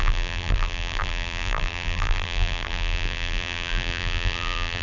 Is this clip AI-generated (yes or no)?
yes